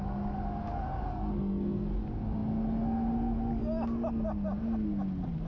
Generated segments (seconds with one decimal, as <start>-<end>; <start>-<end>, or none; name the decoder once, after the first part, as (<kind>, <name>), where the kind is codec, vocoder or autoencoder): 1.1-1.9 (codec, SNAC)